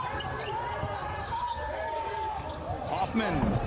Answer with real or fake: real